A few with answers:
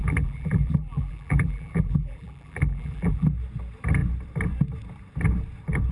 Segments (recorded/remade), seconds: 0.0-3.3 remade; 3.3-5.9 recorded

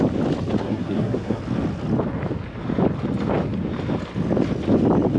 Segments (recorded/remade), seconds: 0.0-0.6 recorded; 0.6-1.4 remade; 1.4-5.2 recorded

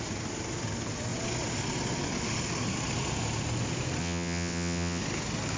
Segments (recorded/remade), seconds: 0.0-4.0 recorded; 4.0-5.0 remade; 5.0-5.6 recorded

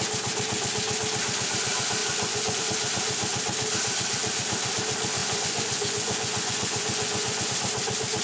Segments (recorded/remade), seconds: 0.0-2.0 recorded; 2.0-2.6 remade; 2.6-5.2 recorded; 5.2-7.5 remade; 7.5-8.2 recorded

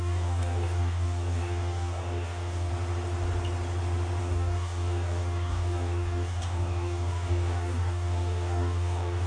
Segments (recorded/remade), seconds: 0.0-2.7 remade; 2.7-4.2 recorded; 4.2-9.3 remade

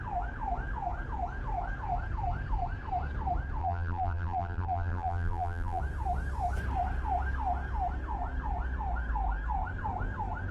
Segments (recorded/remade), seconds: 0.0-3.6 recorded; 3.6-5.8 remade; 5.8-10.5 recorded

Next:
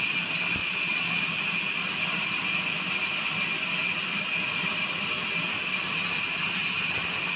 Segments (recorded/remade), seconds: 0.0-0.6 recorded; 0.6-1.2 remade; 1.2-7.4 recorded

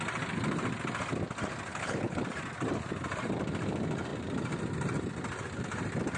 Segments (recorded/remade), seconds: 0.0-1.7 recorded; 1.7-2.2 remade; 2.2-6.2 recorded